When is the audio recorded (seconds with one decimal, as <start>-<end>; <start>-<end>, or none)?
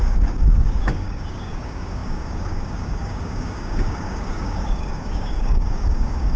none